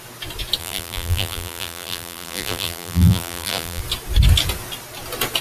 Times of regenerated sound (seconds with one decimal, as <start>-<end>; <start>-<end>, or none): 0.6-3.8